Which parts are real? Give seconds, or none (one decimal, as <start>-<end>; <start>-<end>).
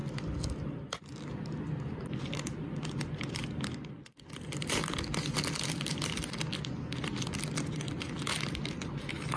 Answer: 0.0-2.6; 3.6-9.4